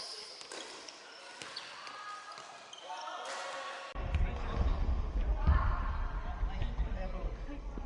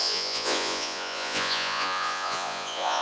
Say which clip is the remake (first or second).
second